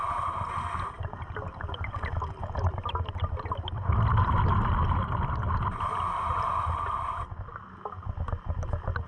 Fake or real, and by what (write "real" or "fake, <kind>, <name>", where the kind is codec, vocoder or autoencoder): real